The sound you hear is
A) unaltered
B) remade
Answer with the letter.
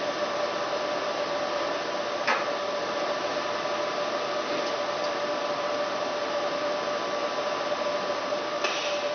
A